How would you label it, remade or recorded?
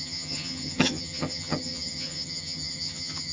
remade